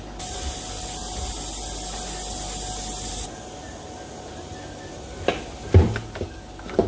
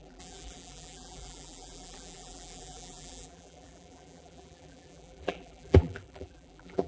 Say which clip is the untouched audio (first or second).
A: first